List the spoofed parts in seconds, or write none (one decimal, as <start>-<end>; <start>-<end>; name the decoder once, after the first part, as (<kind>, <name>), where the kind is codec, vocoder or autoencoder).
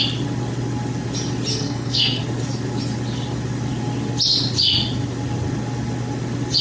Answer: 1.5-2.2 (codec, SNAC)